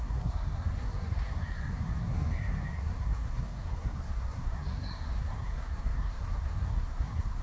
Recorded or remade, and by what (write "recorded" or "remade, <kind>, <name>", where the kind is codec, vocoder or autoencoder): remade, codec, SNAC